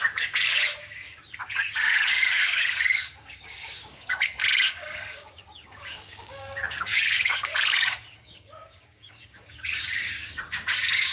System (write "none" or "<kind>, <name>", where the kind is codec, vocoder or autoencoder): codec, DAC